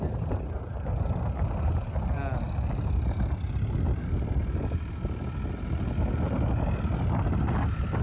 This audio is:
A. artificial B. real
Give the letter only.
B